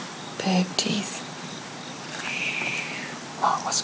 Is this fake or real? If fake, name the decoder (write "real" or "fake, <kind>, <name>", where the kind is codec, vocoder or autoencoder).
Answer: real